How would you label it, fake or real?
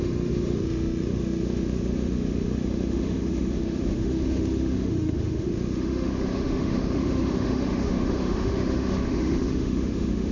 fake